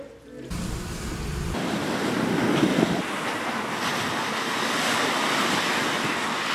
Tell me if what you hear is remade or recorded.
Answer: recorded